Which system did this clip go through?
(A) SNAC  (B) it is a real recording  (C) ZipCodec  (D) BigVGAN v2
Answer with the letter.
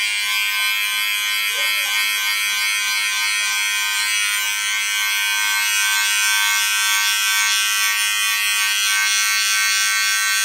B